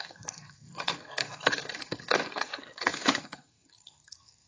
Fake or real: fake